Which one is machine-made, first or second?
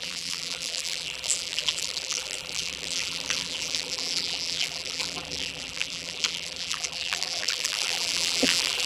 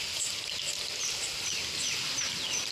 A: first